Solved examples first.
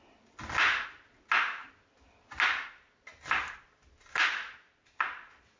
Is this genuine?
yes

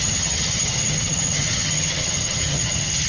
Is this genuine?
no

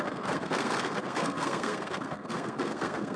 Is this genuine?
no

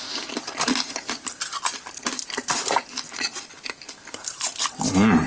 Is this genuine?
yes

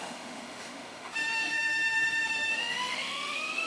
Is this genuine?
no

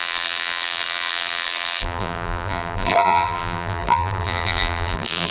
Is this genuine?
no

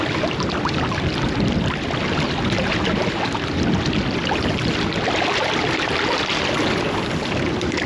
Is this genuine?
yes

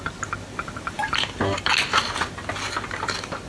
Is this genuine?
yes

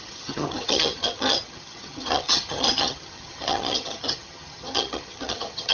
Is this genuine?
no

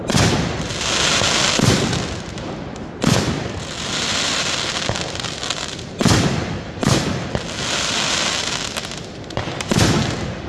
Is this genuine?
yes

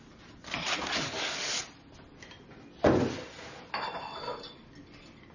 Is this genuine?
yes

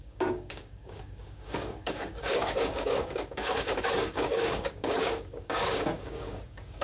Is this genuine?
no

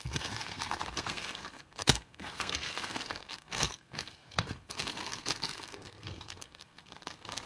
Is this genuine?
no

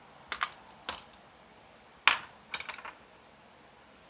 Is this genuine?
yes